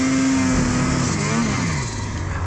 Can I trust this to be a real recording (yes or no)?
yes